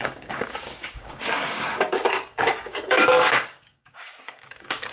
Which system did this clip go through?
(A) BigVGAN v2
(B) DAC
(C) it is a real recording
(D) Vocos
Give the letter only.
B